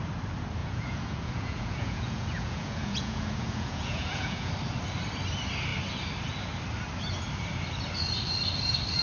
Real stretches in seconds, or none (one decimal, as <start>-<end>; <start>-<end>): 0.0-0.6; 4.5-9.0

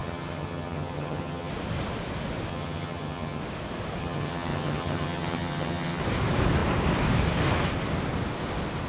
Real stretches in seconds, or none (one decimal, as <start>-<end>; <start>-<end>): 1.5-2.5; 3.4-4.0; 6.0-8.9

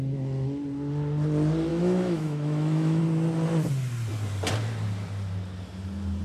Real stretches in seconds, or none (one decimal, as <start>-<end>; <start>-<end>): 0.0-1.7; 3.0-6.2

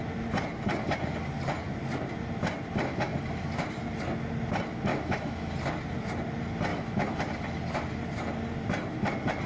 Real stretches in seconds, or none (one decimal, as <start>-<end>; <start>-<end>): 0.0-4.9; 5.5-6.7; 7.2-9.5

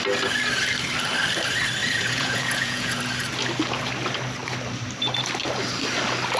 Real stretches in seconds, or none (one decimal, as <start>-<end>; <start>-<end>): 0.0-1.8; 3.0-6.4

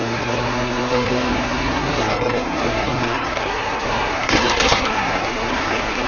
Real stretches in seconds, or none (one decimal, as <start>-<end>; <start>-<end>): none